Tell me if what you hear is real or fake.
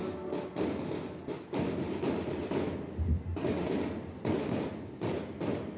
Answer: real